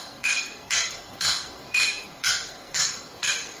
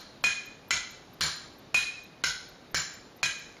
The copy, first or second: first